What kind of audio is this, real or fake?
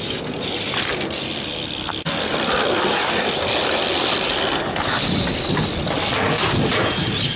real